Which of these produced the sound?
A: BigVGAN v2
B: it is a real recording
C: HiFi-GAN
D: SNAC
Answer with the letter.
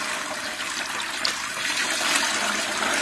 B